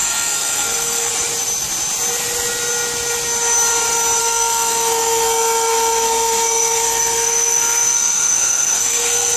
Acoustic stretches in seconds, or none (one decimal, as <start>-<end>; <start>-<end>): 1.1-4.2